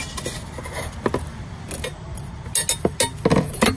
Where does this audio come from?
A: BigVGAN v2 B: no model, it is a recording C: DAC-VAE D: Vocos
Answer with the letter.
B